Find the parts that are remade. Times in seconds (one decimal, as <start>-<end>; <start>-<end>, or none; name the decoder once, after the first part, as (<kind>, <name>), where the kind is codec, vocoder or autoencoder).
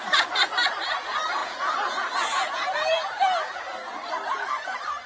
1.4-3.6 (vocoder, Vocos)